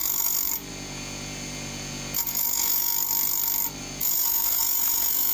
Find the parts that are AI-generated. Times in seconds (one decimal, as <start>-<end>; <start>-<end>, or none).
0.7-2.9; 3.8-5.3